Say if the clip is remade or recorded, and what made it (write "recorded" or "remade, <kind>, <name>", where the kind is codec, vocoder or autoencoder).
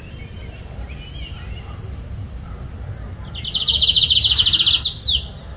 recorded